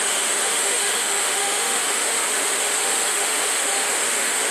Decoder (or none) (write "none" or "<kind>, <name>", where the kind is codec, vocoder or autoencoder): autoencoder, DAC-VAE